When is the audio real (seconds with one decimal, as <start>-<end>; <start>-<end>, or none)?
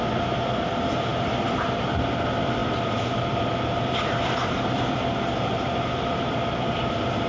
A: 0.0-2.6